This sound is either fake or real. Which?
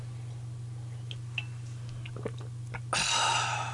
real